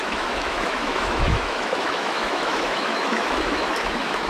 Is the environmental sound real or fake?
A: fake